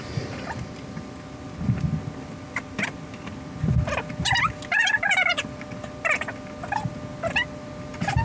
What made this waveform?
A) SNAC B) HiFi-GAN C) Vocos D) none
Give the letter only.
D